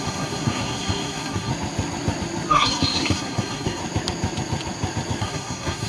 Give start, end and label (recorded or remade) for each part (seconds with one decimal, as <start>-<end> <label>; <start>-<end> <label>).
0.0-1.5 remade; 1.5-2.5 recorded; 2.5-3.8 remade; 3.8-5.2 recorded; 5.2-5.9 remade